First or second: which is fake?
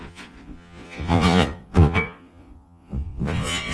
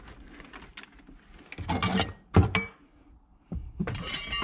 first